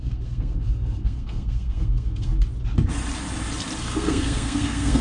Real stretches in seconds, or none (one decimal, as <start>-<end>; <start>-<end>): 2.3-3.8